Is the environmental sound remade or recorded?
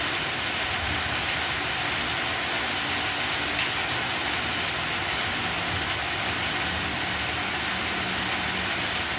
recorded